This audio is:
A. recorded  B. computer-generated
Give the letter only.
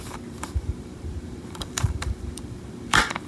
B